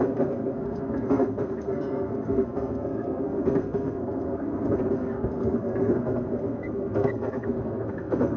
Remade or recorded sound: remade